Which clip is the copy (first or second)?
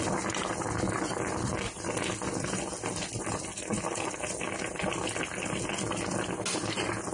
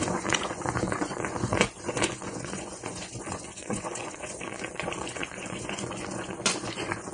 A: second